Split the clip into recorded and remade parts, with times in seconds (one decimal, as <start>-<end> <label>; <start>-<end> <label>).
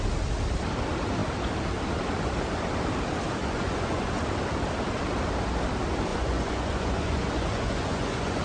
0.0-3.4 recorded; 3.4-4.1 remade; 4.1-6.1 recorded; 6.1-8.4 remade